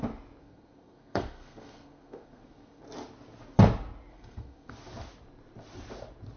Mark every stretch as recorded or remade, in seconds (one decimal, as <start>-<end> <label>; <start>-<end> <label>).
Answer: 0.0-0.4 recorded; 0.4-2.8 remade; 2.8-4.1 recorded; 4.1-4.7 remade; 4.7-6.4 recorded